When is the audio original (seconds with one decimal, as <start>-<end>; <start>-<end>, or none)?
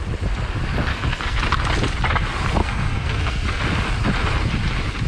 0.0-0.9; 1.4-2.6; 3.6-5.1